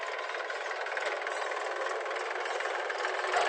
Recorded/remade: recorded